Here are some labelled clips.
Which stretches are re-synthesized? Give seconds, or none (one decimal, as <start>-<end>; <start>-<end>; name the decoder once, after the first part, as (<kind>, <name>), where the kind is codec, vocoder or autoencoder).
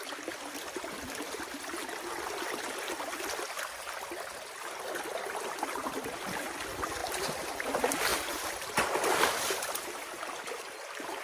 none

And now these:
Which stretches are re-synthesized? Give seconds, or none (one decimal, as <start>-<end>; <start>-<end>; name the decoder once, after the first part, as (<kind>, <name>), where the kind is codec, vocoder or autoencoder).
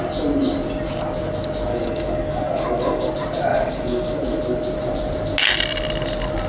1.7-3.1 (codec, DAC); 3.5-4.4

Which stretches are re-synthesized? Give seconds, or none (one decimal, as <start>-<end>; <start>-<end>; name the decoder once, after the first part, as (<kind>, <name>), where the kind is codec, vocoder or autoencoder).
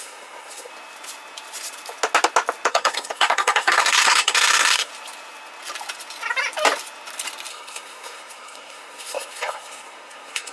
0.0-0.7 (codec, SNAC); 2.7-4.9; 7.5-10.5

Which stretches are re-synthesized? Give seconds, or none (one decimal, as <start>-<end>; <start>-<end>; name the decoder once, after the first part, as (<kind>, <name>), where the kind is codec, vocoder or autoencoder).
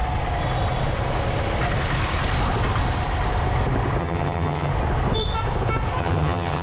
4.0-4.7 (vocoder, HiFi-GAN); 6.0-6.6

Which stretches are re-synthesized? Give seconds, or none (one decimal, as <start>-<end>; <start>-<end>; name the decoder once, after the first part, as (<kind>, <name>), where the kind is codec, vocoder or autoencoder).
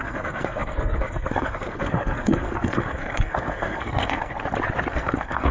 0.0-4.3 (codec, SNAC); 4.9-5.5